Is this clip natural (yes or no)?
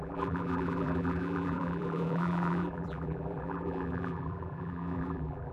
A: no